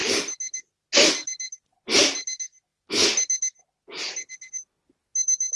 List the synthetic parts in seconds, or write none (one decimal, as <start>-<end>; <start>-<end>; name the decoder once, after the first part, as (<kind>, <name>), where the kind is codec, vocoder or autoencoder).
none